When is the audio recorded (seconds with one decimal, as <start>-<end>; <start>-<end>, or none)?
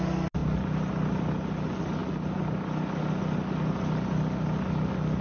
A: 0.0-5.2